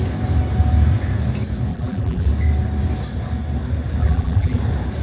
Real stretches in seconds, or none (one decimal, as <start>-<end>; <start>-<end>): 0.0-1.7; 2.3-4.0; 4.6-5.0